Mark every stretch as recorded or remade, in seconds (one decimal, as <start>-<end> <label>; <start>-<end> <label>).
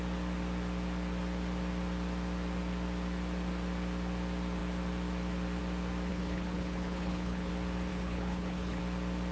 0.0-6.1 recorded; 6.1-7.5 remade; 7.5-7.9 recorded; 7.9-8.8 remade; 8.8-9.3 recorded